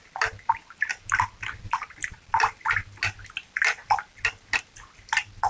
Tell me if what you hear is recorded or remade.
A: recorded